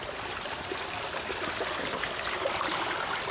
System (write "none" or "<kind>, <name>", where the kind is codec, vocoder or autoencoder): vocoder, BigVGAN v2